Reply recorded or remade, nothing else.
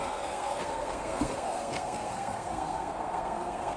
remade